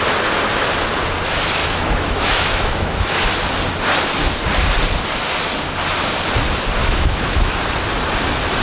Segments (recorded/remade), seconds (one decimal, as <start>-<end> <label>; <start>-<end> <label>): 0.0-1.6 recorded; 1.6-3.3 remade; 3.3-6.8 recorded; 6.8-7.6 remade; 7.6-8.6 recorded

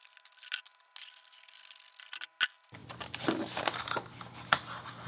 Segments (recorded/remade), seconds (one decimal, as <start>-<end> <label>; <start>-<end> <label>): 0.0-2.8 recorded; 2.8-3.5 remade; 3.5-5.1 recorded